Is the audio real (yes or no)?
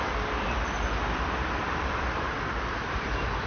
no